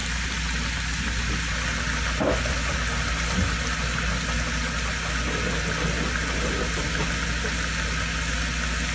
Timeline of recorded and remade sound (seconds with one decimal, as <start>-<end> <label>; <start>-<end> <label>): 0.0-8.9 recorded